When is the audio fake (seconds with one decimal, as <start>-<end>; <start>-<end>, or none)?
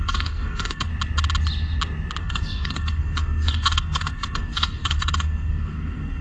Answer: 0.0-0.9; 2.2-6.2